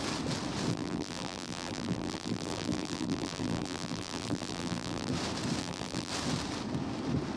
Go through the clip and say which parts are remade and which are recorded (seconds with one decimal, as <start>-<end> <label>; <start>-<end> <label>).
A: 0.0-0.7 recorded; 0.7-5.1 remade; 5.1-5.6 recorded; 5.6-6.1 remade; 6.1-7.4 recorded